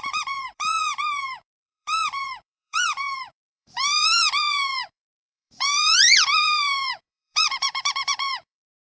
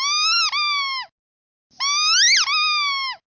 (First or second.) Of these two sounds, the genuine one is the second